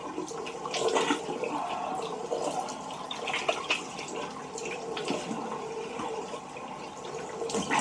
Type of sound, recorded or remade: recorded